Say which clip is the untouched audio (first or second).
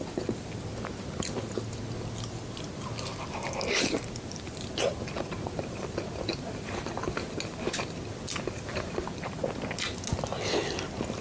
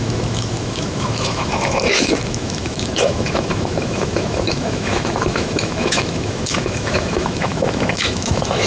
first